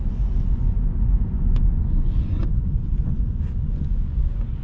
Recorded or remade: remade